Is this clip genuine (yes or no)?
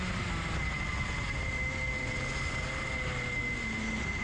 yes